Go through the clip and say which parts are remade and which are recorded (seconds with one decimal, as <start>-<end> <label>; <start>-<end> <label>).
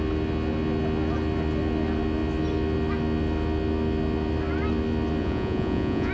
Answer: 0.0-5.2 recorded; 5.2-6.1 remade